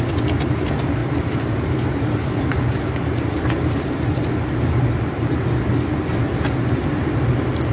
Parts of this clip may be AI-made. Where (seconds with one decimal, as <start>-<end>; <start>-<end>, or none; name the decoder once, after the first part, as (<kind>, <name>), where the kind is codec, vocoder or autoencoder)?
1.0-5.6 (vocoder, BigVGAN v2)